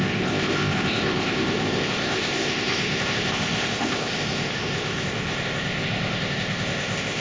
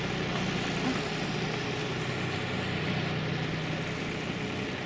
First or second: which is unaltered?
second